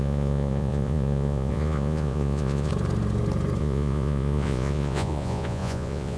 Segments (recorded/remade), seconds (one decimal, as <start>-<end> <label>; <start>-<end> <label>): 0.0-2.7 remade; 2.7-3.6 recorded; 3.6-6.2 remade